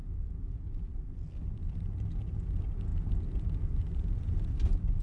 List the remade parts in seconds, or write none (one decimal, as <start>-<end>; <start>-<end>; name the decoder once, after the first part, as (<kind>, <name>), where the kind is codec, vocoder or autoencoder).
none